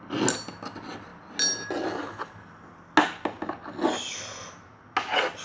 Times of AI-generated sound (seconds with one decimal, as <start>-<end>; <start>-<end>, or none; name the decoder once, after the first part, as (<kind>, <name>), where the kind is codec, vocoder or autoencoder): none